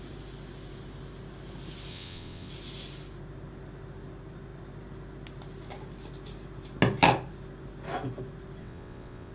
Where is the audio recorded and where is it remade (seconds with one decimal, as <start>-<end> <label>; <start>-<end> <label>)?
0.0-1.9 recorded; 1.9-2.5 remade; 2.5-8.6 recorded; 8.6-9.3 remade